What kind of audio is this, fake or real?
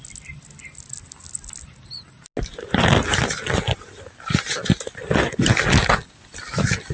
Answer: real